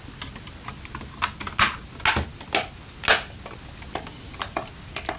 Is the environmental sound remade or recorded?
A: recorded